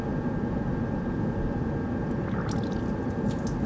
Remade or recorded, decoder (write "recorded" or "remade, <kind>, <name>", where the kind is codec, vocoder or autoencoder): recorded